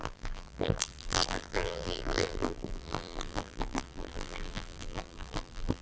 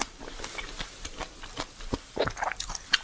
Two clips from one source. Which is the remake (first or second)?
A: first